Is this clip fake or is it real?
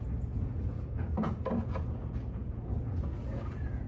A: fake